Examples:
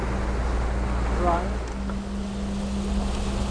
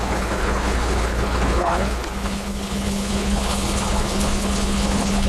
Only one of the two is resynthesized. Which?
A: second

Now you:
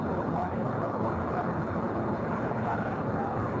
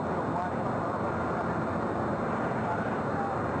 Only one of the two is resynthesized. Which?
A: first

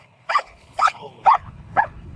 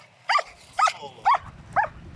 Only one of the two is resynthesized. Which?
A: first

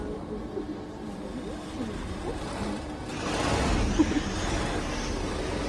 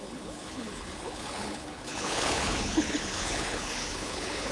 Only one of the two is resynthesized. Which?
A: second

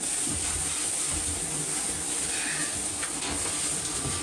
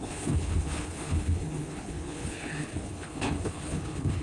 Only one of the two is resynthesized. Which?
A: second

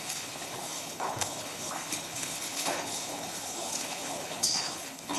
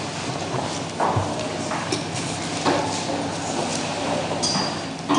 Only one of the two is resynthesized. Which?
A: first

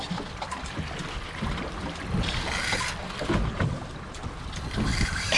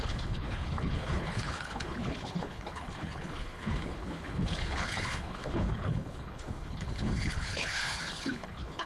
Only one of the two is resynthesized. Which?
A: second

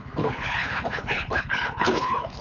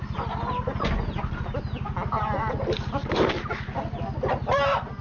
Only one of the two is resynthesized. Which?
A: first